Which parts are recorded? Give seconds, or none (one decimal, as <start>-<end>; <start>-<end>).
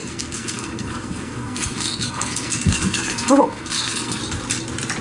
4.2-5.0